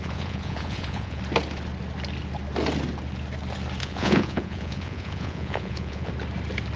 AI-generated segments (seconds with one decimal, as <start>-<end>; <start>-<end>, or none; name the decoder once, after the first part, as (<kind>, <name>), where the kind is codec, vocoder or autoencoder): 0.0-1.2 (vocoder, Vocos); 3.8-6.1